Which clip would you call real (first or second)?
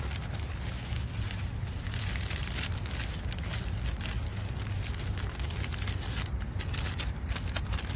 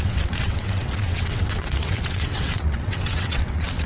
first